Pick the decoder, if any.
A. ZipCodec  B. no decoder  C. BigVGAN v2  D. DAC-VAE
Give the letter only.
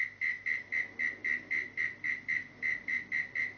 B